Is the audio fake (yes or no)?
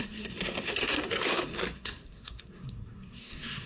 yes